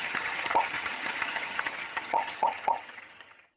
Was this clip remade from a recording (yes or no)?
yes